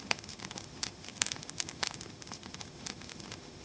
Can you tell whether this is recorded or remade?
remade